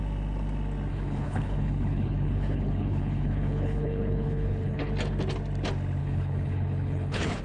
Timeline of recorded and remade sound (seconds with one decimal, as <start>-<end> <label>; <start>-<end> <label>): 0.0-0.9 recorded; 0.9-4.9 remade; 4.9-6.0 recorded; 6.0-7.4 remade